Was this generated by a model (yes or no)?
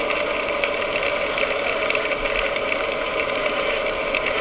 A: no